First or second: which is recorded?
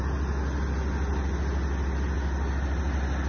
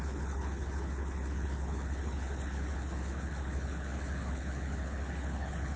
first